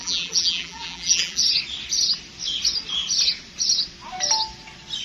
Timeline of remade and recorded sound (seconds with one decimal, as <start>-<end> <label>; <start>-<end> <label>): 0.0-1.4 remade; 1.4-5.0 recorded